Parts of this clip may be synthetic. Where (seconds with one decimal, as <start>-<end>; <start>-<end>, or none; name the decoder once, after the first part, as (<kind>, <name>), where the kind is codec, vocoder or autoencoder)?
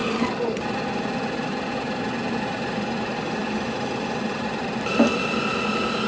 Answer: none